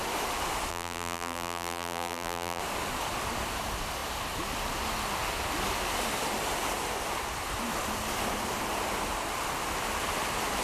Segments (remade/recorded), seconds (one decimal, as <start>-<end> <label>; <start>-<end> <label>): 0.0-0.7 recorded; 0.7-2.6 remade; 2.6-10.6 recorded